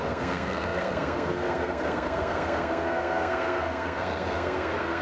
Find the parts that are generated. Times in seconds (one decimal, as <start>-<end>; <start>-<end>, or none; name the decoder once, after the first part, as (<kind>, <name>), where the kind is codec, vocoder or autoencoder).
0.0-5.0 (codec, SNAC)